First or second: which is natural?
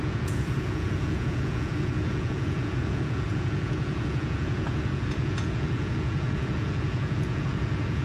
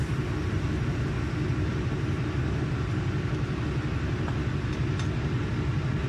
second